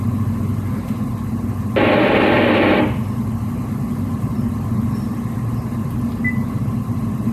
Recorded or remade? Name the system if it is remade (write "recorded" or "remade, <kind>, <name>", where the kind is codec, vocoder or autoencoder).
recorded